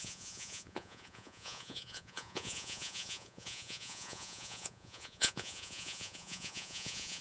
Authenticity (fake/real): fake